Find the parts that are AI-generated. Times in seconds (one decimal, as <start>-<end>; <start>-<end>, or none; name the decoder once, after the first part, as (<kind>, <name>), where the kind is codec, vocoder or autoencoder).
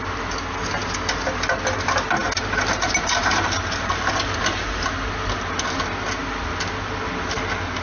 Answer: none